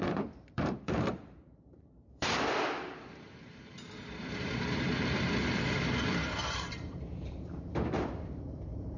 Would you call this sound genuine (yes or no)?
no